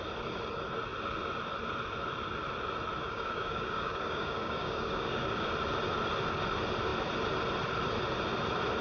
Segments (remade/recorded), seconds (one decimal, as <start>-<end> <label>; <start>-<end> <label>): 0.0-3.0 recorded; 3.0-5.5 remade; 5.5-8.8 recorded